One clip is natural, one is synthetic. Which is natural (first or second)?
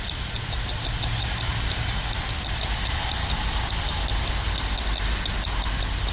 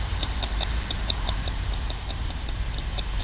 first